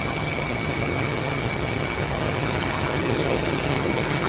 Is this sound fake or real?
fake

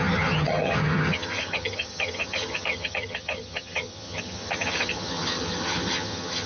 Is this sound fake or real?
fake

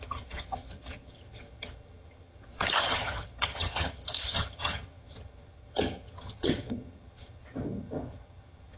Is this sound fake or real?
fake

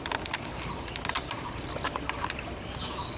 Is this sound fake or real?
real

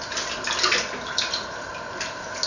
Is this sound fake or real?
real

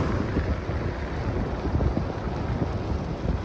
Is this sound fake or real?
real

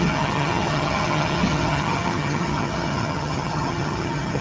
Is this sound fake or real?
fake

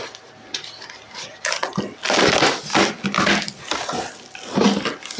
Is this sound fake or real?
real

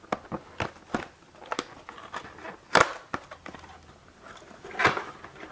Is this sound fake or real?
real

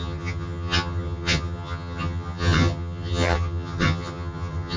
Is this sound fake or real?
fake